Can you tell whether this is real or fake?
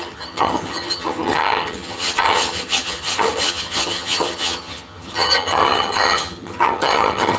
fake